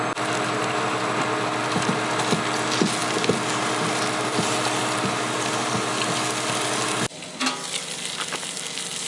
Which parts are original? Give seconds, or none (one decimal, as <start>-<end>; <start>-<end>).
0.0-9.1